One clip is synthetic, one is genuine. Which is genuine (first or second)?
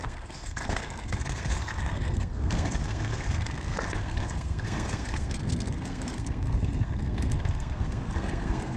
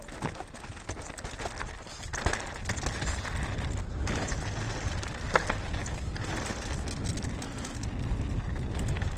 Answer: second